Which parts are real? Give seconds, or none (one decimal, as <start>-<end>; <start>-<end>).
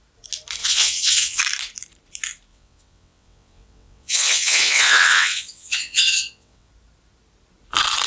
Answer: 0.0-0.6; 1.4-2.5; 6.7-8.1